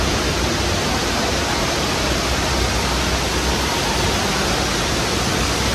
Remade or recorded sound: recorded